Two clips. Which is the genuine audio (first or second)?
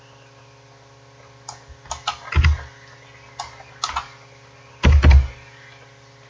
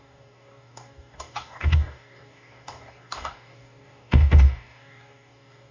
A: first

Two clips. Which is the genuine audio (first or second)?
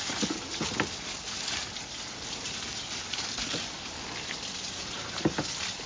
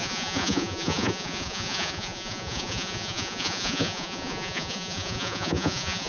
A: first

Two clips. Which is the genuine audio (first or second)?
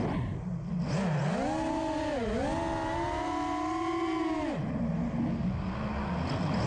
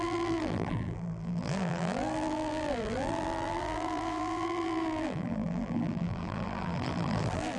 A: first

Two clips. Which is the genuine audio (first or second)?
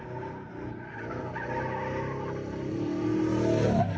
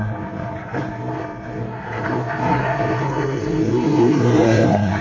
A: first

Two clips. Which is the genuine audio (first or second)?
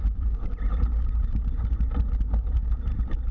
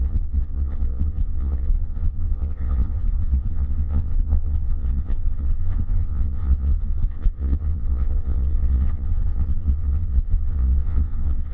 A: first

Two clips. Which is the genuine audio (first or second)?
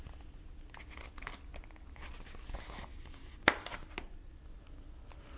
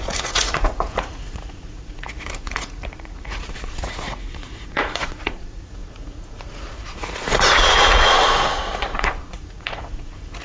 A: first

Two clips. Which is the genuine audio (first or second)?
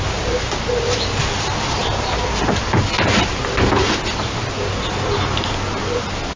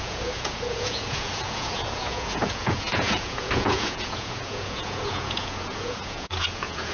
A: first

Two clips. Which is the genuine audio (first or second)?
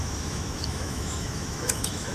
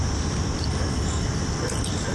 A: second